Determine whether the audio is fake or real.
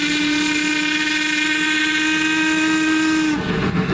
real